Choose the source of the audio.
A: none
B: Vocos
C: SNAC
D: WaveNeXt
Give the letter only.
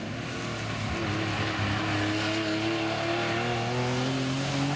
A